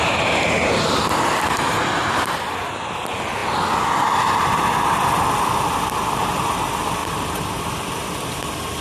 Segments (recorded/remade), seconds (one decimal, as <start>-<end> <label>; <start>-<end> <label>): 0.0-7.0 recorded; 7.0-8.3 remade; 8.3-8.8 recorded